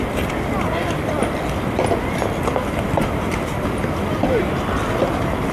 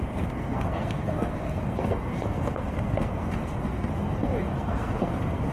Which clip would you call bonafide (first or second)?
first